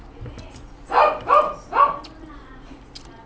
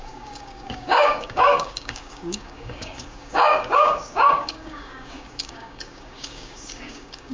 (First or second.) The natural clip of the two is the first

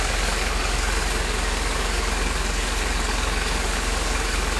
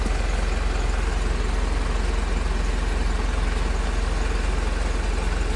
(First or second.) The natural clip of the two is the second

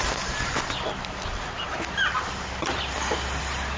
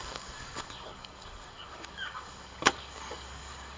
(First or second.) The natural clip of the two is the first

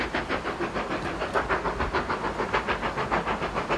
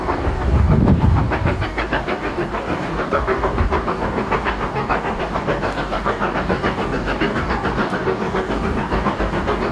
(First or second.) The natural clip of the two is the first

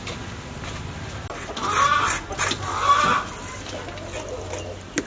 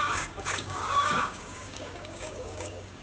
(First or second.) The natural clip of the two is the first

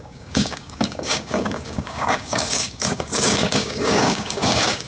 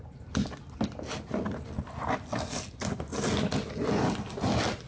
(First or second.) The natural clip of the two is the second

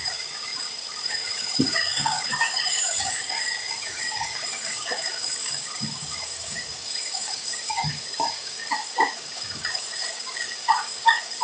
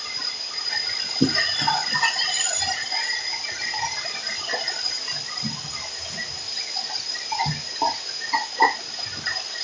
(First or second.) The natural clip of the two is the second